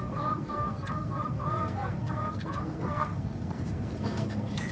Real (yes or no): no